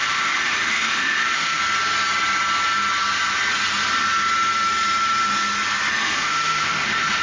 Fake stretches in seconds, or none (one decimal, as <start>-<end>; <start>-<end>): 0.0-1.6; 5.9-7.2